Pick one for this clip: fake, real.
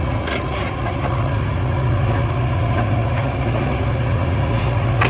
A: fake